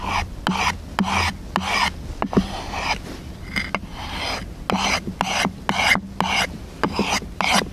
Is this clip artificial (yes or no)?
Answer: no